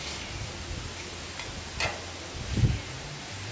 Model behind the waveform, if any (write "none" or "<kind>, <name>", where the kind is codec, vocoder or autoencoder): none